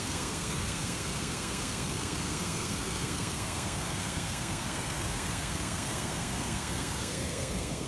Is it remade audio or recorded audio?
remade